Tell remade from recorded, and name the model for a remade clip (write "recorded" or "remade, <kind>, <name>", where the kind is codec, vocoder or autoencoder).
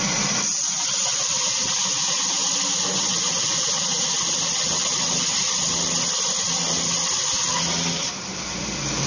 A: recorded